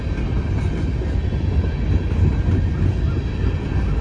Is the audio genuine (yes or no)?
yes